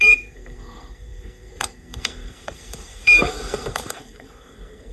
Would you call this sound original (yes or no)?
no